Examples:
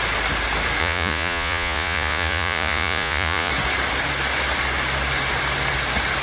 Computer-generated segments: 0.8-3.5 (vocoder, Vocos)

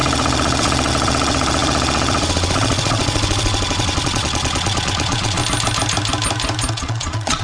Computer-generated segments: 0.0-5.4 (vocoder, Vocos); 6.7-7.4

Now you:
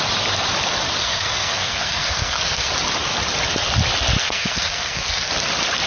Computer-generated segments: 1.0-2.7 (codec, SNAC); 4.2-5.3

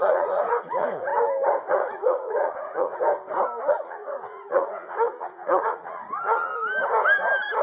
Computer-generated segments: 0.0-1.1 (vocoder, Vocos); 1.7-2.9; 3.7-6.5

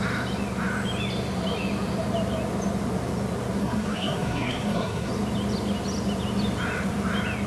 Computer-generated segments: 3.6-5.1 (codec, SNAC)

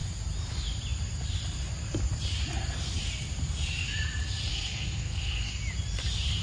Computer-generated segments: 4.5-5.5 (codec, SNAC)

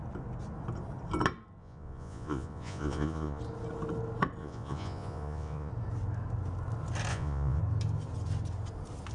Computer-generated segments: 1.6-3.4 (vocoder, Vocos); 4.4-5.7; 7.1-7.6

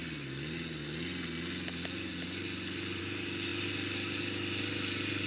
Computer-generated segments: none